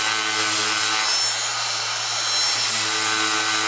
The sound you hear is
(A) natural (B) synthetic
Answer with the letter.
A